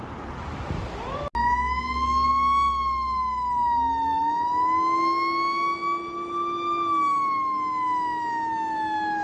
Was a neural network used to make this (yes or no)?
no